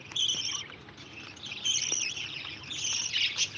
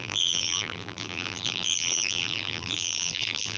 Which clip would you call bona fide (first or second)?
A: first